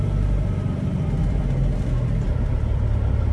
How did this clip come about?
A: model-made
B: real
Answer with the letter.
A